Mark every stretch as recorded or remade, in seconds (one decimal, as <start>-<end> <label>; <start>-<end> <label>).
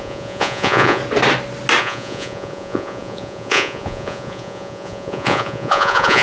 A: 0.0-1.0 remade; 1.0-1.8 recorded; 1.8-6.2 remade